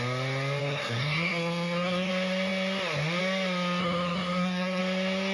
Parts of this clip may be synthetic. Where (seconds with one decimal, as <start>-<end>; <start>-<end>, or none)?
0.6-2.1; 3.8-4.8